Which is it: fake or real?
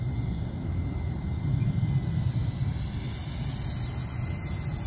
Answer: real